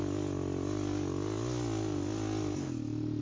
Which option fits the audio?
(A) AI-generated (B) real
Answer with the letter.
B